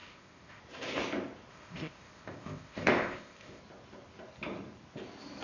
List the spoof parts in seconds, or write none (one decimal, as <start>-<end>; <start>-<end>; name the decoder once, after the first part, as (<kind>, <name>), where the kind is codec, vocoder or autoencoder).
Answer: 0.0-0.6 (codec, ZipCodec); 1.5-3.6